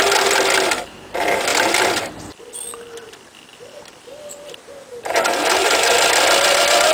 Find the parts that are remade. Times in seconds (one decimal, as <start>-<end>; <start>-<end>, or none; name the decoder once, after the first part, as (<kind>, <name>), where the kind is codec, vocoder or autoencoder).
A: none